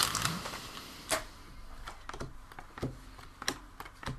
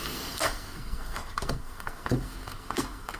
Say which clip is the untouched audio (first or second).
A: first